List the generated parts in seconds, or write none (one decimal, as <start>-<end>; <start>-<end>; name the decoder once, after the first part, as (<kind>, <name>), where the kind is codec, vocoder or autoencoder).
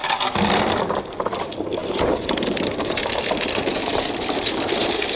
1.8-5.2 (vocoder, BigVGAN v2)